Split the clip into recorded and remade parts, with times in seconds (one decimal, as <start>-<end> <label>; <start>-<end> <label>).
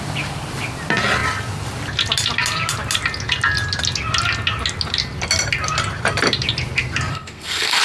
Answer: 0.0-7.1 recorded; 7.1-7.8 remade